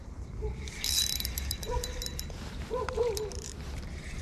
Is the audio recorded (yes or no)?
no